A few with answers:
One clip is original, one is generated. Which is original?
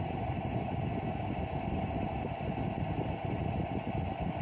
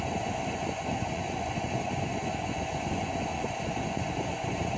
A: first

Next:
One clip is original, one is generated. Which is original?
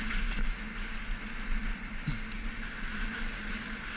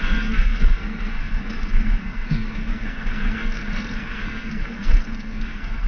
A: first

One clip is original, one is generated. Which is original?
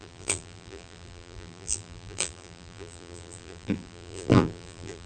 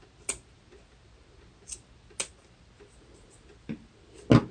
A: second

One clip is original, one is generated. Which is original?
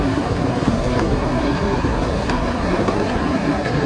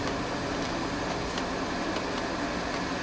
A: second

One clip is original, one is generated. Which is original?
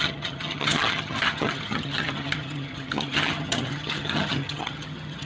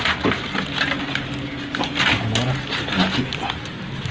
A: second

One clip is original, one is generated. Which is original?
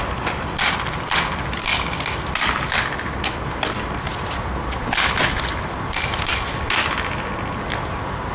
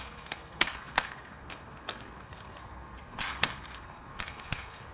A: first